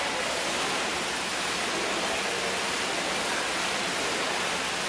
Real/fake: real